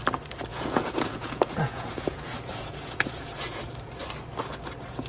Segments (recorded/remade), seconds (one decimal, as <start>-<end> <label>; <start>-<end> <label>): 0.0-0.5 recorded; 0.5-3.6 remade; 3.6-5.1 recorded